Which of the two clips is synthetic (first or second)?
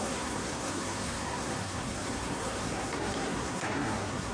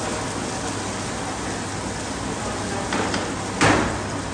first